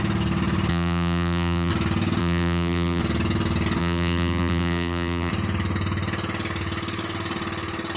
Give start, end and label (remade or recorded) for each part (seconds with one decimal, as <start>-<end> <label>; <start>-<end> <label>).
0.0-0.7 recorded; 0.7-1.7 remade; 1.7-2.2 recorded; 2.2-3.0 remade; 3.0-3.8 recorded; 3.8-5.3 remade; 5.3-8.0 recorded